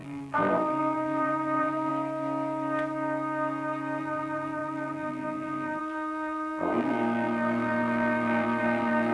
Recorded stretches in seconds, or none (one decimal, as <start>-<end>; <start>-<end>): 1.9-4.0